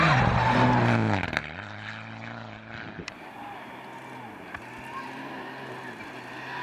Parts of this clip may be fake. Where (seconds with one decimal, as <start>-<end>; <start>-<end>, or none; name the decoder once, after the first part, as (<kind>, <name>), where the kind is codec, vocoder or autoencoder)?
none